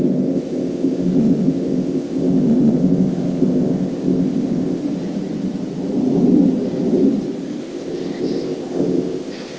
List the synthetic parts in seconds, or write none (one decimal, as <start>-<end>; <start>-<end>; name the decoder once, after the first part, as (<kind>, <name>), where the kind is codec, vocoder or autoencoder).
0.0-4.8 (codec, ZipCodec); 7.6-9.6